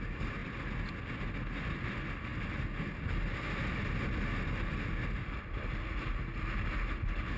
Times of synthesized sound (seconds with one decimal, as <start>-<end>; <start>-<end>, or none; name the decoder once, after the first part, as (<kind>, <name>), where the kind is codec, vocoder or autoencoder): none